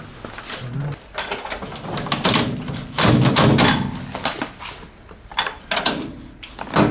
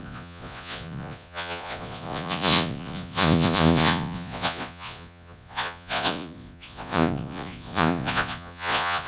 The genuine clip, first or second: first